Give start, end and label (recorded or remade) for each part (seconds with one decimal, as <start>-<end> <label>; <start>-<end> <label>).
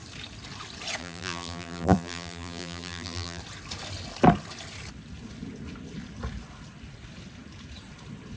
0.0-1.0 recorded; 1.0-3.4 remade; 3.4-8.4 recorded